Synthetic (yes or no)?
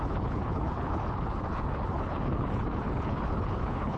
yes